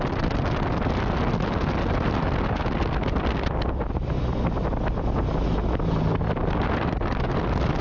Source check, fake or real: real